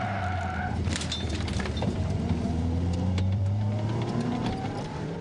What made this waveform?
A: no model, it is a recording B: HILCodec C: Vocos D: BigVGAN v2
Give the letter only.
D